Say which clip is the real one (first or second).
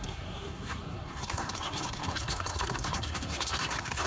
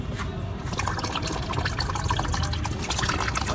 second